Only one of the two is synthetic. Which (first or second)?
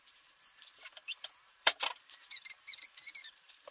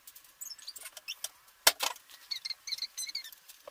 first